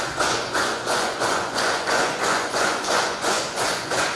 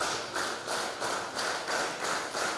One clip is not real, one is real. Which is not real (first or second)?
first